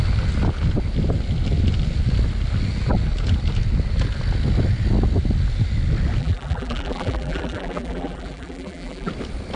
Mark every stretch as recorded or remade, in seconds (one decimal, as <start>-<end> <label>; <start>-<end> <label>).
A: 0.0-6.2 recorded; 6.2-9.1 remade; 9.1-9.6 recorded